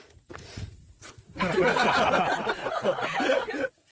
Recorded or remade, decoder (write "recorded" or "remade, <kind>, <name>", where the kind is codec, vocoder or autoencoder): remade, vocoder, Vocos